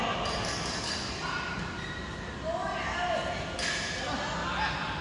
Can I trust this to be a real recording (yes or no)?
yes